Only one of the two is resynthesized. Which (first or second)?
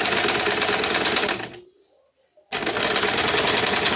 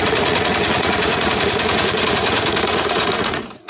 second